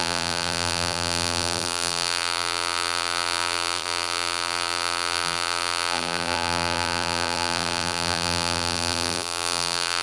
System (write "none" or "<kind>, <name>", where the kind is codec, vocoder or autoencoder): vocoder, BigVGAN v2